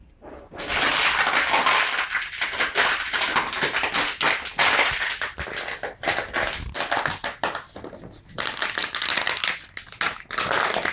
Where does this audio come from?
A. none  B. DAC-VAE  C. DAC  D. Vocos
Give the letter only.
A